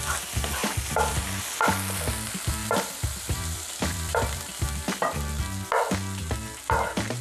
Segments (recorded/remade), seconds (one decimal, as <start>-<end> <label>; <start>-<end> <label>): 0.0-0.6 recorded; 0.6-1.4 remade; 1.4-2.6 recorded; 2.6-5.4 remade; 5.4-7.2 recorded